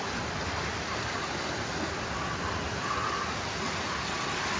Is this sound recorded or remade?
recorded